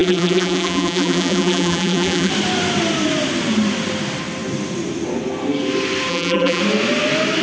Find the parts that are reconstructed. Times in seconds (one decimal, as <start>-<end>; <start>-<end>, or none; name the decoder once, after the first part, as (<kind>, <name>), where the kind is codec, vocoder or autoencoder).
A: 0.0-2.3 (vocoder, BigVGAN v2); 6.1-6.6